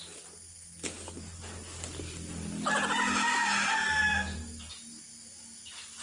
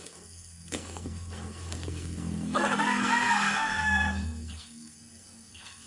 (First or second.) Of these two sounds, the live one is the first